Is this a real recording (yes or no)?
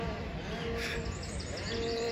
no